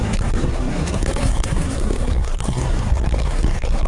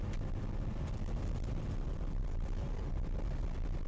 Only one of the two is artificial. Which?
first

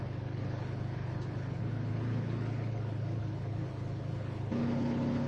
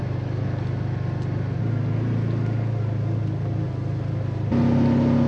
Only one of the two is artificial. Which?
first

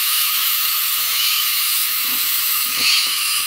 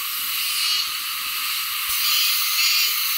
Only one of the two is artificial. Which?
first